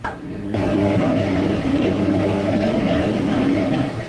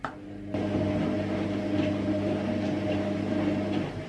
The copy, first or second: first